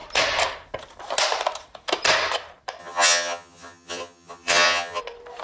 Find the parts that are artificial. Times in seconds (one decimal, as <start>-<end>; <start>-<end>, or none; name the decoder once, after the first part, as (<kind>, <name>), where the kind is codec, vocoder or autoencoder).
2.8-5.0 (vocoder, HiFi-GAN)